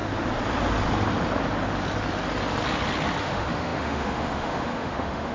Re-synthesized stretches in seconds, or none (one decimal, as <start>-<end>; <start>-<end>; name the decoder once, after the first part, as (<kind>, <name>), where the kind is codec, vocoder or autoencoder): 3.2-5.3 (autoencoder, DAC-VAE)

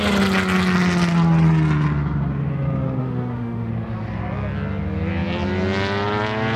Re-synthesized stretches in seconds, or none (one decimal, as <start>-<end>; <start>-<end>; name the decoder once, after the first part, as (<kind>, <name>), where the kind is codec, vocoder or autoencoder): 3.0-3.7 (autoencoder, DAC-VAE)

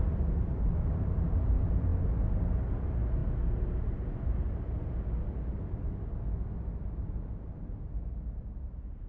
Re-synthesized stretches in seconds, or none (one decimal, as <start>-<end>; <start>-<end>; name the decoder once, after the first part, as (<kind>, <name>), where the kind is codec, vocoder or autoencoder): none

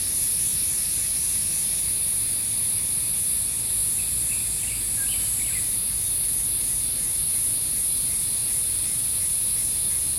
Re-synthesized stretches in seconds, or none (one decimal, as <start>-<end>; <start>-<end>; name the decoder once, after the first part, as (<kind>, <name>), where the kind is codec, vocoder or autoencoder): none

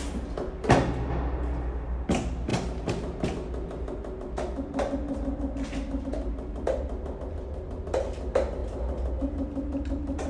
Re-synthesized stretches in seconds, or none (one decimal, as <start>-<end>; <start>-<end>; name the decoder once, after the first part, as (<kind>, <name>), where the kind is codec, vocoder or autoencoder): none

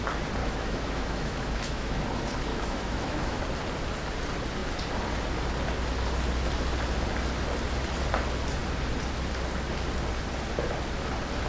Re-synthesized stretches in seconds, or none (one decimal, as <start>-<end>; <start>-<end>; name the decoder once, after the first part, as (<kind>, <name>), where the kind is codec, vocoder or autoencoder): 0.4-2.0 (autoencoder, DAC-VAE); 2.5-3.4

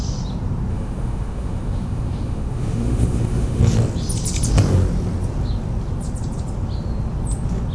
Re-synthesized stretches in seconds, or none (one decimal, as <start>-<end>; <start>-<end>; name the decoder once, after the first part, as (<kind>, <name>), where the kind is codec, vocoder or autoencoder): 0.7-3.6 (autoencoder, DAC-VAE)

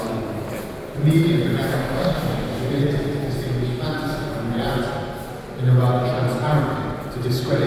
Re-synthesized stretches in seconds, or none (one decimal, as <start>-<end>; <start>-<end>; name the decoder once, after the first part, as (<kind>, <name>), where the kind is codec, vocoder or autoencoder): 1.7-2.8 (autoencoder, DAC-VAE)